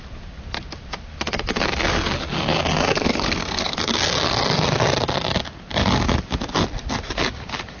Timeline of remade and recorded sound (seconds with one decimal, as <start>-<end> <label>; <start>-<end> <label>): 0.0-2.9 recorded; 2.9-3.8 remade; 3.8-7.8 recorded